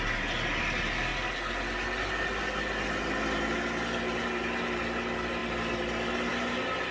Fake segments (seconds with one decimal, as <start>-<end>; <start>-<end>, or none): none